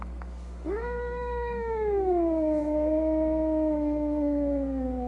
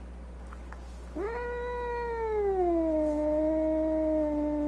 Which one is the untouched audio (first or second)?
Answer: second